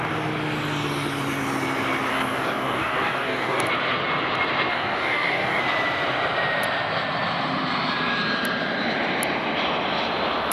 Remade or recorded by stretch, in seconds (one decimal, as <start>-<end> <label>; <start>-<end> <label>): 0.0-2.1 recorded; 2.1-3.7 remade; 3.7-4.7 recorded; 4.7-5.6 remade; 5.6-10.5 recorded